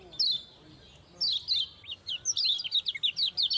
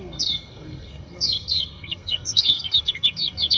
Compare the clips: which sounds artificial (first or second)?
second